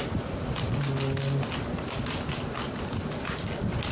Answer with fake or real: real